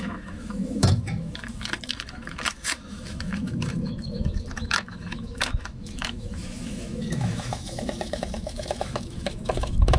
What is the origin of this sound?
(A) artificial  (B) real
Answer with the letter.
A